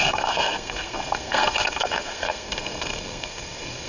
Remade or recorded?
remade